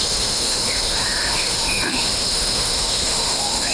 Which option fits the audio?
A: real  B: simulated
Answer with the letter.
B